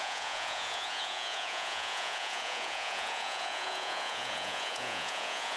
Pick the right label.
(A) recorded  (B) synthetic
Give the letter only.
B